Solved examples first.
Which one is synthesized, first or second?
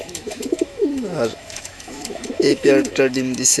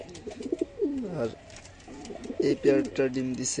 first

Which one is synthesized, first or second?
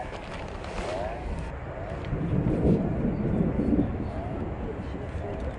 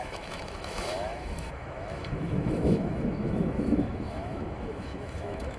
second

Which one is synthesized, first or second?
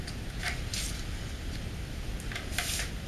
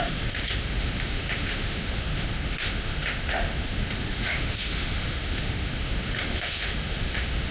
second